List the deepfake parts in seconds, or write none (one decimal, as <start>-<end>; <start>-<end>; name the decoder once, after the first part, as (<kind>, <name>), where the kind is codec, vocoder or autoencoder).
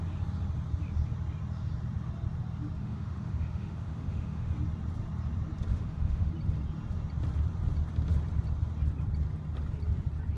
2.8-4.5 (autoencoder, DAC-VAE); 5.7-6.3